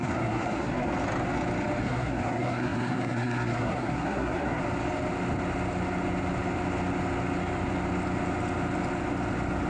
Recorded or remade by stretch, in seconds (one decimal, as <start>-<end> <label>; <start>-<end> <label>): 0.0-0.9 remade; 0.9-1.8 recorded; 1.8-4.6 remade; 4.6-9.7 recorded